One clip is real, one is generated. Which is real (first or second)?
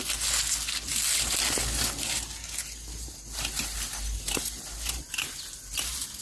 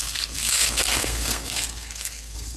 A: first